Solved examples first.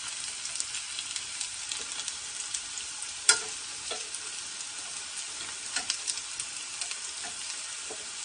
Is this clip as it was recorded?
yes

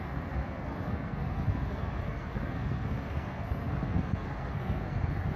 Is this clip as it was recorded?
no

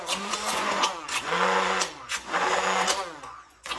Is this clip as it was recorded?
no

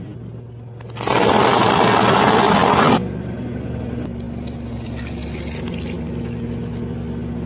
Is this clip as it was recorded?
yes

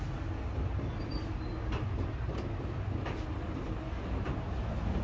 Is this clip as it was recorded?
yes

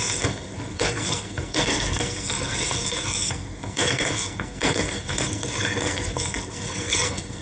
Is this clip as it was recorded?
no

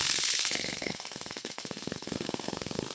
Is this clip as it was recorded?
no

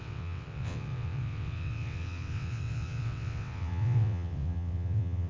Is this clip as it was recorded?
no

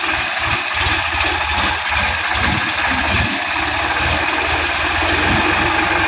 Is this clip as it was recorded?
yes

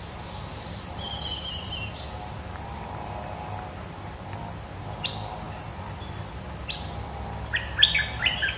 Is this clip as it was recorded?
yes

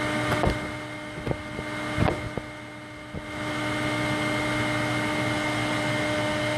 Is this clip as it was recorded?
yes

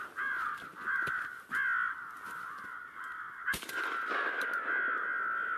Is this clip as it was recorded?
yes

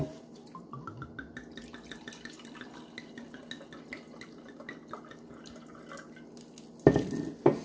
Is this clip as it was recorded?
yes